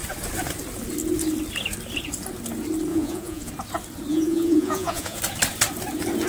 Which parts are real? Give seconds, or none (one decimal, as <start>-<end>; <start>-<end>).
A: 0.0-2.9; 3.5-4.1; 5.2-6.3